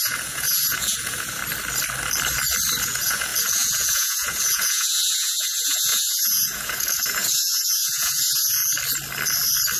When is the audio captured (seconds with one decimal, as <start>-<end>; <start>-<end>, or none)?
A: 1.4-2.8; 8.6-9.8